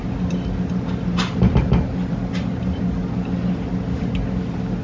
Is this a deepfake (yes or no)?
no